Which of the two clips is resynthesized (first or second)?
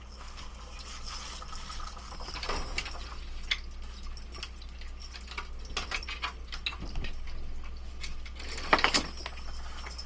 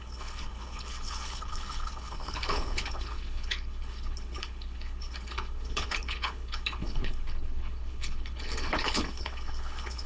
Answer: second